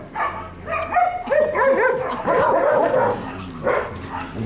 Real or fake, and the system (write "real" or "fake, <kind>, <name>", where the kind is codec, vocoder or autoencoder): real